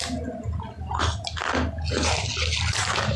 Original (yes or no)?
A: yes